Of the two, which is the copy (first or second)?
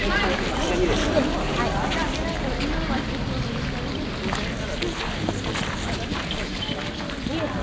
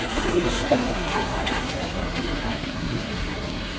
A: second